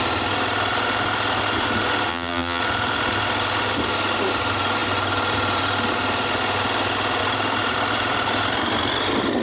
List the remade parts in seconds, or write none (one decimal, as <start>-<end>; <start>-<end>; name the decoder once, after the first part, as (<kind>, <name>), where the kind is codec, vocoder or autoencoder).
2.1-2.6 (vocoder, BigVGAN v2)